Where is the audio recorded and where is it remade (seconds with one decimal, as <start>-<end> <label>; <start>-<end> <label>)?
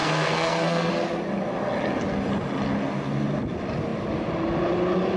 0.0-0.9 remade; 0.9-5.2 recorded